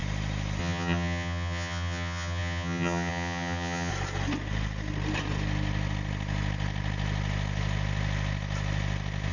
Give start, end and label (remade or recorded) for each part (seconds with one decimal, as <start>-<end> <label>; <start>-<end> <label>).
0.0-0.6 recorded; 0.6-3.9 remade; 3.9-9.3 recorded